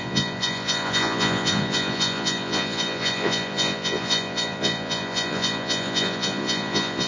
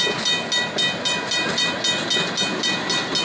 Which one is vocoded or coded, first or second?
first